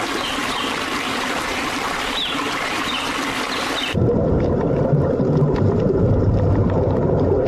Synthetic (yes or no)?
yes